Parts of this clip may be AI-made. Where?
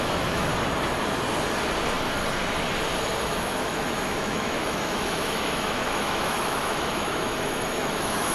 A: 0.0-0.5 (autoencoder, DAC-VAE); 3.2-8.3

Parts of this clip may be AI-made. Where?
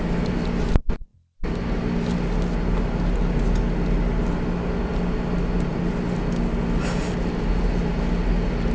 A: none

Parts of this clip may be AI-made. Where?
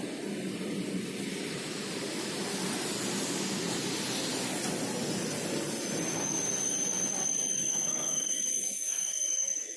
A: 7.6-9.8 (codec, SNAC)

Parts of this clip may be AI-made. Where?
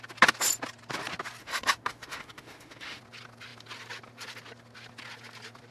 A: 1.4-3.0 (autoencoder, DAC-VAE)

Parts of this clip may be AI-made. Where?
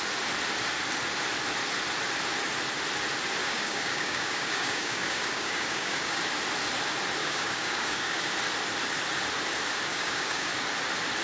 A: 3.4-6.2 (codec, DAC); 7.2-8.3; 9.9-10.5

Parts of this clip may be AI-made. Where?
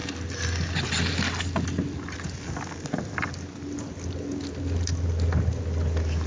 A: none